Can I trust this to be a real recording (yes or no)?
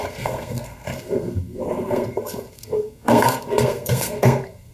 no